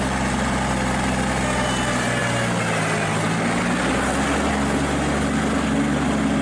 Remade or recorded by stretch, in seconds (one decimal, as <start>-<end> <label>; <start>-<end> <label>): 0.0-6.4 recorded